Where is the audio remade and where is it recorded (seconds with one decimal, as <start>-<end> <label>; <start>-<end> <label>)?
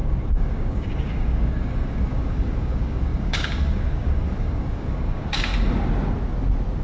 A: 0.0-5.5 remade; 5.5-6.8 recorded